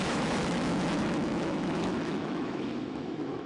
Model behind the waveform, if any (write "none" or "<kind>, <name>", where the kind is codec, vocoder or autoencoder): autoencoder, DAC-VAE